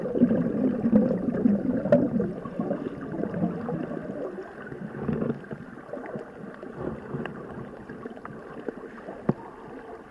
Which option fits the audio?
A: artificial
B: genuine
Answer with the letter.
B